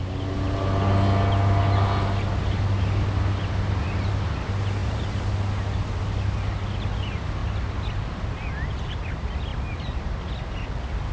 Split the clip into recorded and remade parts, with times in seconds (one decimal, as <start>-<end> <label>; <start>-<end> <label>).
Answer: 0.0-4.8 recorded; 4.8-5.3 remade; 5.3-11.1 recorded